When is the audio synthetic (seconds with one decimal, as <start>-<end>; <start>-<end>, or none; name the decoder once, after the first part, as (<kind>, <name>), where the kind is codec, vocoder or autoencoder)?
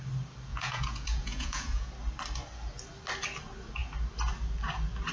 0.5-1.9 (vocoder, Vocos)